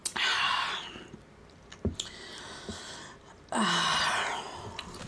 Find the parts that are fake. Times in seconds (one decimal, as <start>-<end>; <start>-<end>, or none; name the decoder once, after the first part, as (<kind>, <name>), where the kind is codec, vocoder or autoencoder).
none